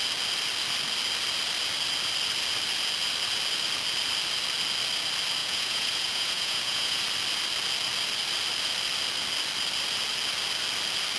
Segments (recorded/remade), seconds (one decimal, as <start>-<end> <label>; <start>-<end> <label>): 0.0-5.4 recorded; 5.4-7.0 remade; 7.0-11.2 recorded